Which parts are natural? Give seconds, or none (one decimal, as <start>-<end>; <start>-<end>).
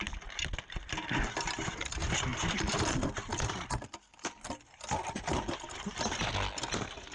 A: 0.0-2.3; 6.0-7.1